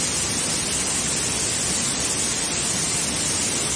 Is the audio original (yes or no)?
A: yes